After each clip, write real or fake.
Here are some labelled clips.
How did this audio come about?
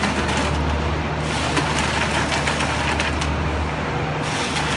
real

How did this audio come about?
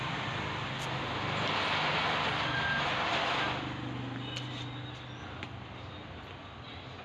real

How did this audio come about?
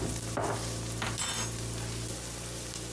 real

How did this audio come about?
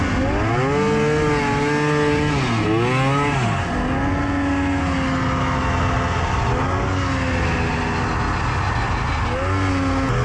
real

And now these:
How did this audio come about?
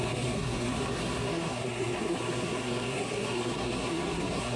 fake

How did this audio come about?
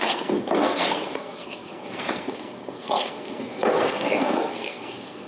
fake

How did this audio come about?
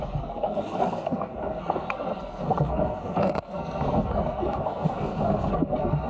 fake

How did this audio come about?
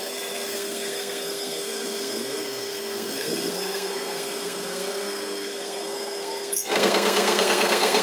fake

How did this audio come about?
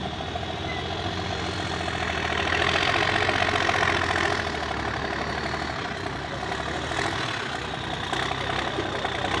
real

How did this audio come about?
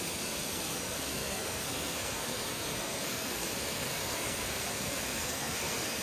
fake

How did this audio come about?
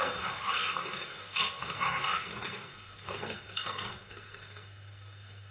fake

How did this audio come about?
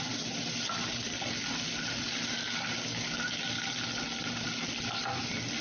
real